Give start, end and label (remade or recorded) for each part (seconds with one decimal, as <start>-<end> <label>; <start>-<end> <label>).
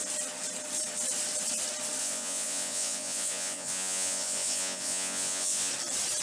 0.0-2.0 recorded; 2.0-5.7 remade; 5.7-6.2 recorded